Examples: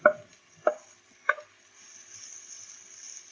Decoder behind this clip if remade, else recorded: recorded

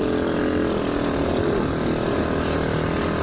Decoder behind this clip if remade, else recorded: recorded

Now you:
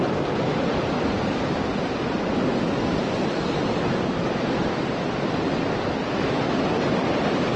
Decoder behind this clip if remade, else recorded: recorded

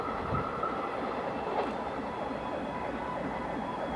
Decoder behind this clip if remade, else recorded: recorded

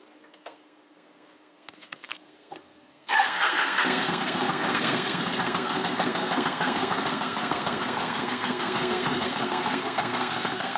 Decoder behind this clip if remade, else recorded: remade, codec, SNAC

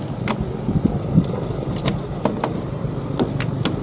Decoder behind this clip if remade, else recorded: recorded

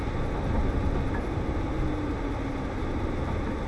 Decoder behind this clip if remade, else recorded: recorded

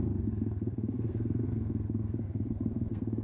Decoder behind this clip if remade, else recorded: remade, codec, SNAC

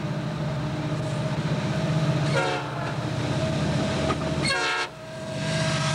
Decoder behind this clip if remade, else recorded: recorded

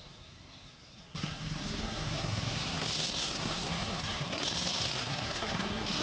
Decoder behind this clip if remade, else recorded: remade, codec, SNAC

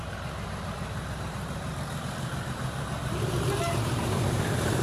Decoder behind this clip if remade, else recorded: remade, vocoder, BigVGAN v2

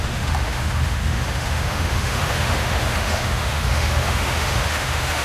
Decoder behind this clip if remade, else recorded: remade, autoencoder, DAC-VAE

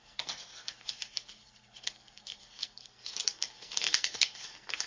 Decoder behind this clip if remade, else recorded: remade, codec, SNAC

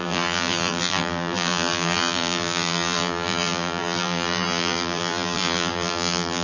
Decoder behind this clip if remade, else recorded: remade, vocoder, BigVGAN v2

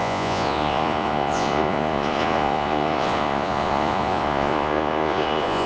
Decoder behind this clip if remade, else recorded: remade, vocoder, Vocos